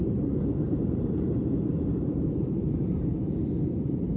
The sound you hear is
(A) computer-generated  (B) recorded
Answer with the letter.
A